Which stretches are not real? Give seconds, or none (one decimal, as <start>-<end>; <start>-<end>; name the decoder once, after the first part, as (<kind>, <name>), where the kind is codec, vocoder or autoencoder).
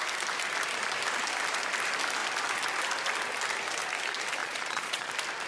4.4-5.1 (vocoder, Vocos)